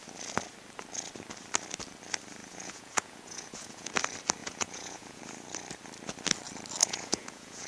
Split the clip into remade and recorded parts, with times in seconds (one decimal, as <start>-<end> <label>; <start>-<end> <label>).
0.0-2.4 recorded; 2.4-3.9 remade; 3.9-4.4 recorded; 4.4-5.2 remade; 5.2-6.8 recorded; 6.8-7.7 remade